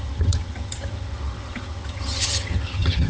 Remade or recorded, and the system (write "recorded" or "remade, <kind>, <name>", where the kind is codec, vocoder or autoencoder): remade, vocoder, HiFi-GAN